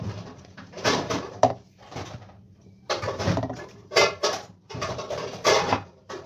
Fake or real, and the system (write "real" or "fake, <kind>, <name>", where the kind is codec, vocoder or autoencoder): fake, vocoder, BigVGAN v2